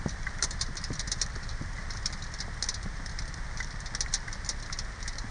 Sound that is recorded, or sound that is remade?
remade